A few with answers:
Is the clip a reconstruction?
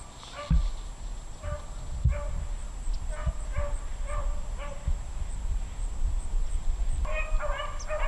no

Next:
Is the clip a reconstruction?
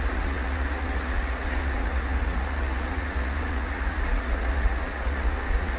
yes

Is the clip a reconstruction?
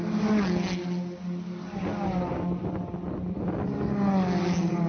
no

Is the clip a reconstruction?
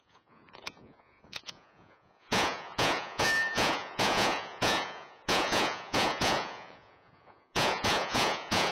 yes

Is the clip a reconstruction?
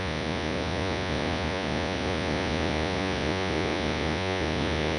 yes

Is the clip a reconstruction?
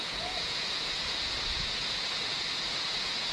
yes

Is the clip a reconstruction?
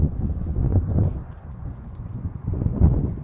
yes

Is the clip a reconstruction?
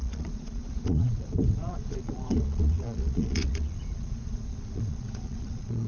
yes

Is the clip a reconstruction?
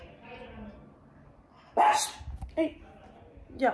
no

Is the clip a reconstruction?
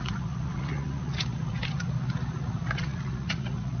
yes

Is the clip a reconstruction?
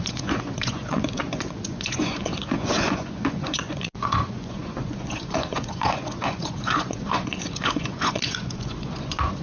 yes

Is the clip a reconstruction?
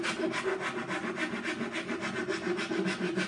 no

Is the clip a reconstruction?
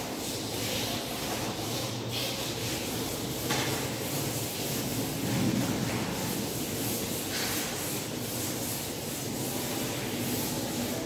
no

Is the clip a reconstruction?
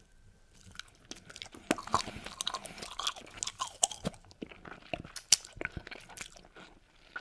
no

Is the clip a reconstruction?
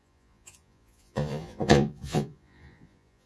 yes